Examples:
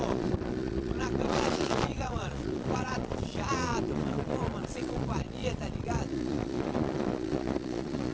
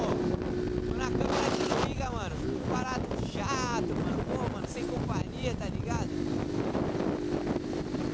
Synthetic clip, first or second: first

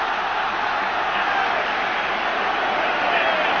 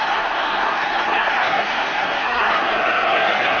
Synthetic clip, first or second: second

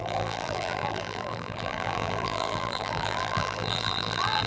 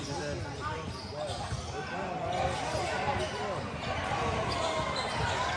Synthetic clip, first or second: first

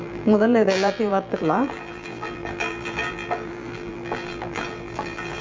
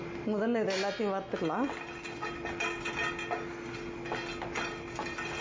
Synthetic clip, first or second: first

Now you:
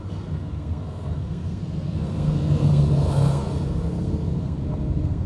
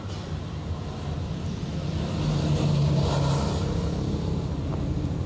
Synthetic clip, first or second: first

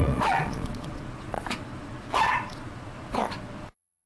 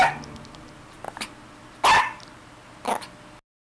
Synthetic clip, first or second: first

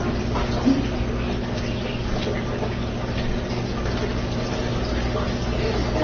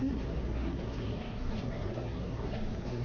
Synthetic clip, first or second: second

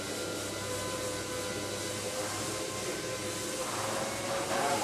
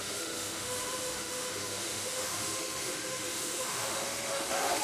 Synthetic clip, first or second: second